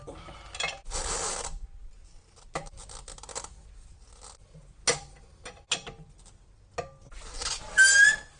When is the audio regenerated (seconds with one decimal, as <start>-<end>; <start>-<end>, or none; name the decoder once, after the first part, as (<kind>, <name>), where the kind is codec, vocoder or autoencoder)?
none